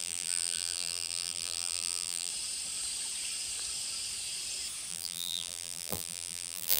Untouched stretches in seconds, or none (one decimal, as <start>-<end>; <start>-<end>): 2.3-4.9